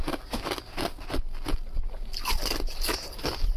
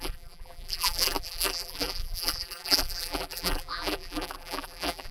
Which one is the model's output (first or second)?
second